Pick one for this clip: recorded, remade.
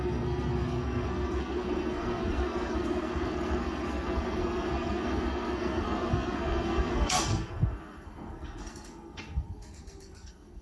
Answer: remade